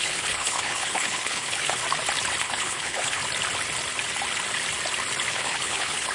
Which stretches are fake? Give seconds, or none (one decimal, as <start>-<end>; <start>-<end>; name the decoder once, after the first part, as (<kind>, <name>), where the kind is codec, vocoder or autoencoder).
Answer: 0.0-1.8 (codec, HILCodec); 2.4-3.2; 5.3-6.1